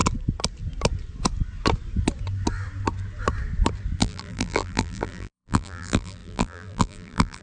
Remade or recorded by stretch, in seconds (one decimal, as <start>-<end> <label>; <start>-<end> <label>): 0.0-4.0 recorded; 4.0-7.4 remade